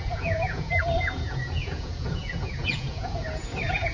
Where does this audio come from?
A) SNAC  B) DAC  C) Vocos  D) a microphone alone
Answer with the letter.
C